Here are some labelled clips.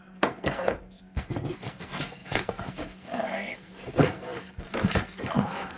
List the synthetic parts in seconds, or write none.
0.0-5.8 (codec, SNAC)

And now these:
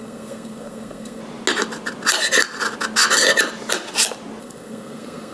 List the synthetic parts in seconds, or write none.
0.0-1.2 (codec, SNAC); 4.4-5.3

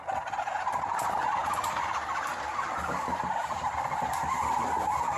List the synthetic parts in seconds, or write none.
none